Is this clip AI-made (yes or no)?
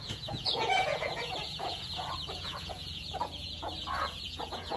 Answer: yes